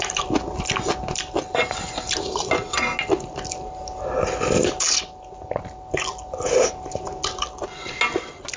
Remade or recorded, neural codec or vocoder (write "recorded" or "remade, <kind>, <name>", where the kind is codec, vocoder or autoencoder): recorded